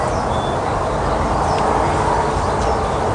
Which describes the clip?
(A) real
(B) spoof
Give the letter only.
A